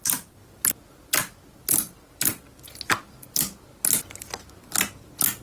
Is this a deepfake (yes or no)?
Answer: no